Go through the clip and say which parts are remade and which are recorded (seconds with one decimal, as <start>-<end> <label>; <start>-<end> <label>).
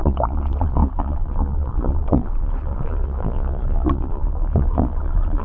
0.0-5.4 remade